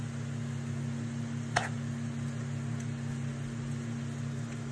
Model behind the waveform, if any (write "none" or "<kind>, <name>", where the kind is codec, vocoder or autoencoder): none